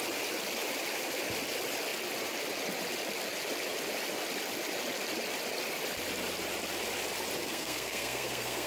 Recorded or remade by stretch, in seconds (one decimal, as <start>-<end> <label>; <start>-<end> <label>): 0.0-7.4 recorded; 7.4-8.7 remade